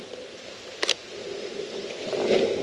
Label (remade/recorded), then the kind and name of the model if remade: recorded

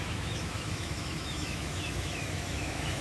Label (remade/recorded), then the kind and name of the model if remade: remade, autoencoder, DAC-VAE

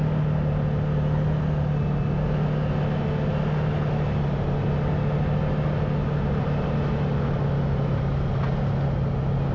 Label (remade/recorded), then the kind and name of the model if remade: recorded